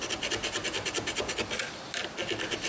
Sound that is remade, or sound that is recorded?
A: recorded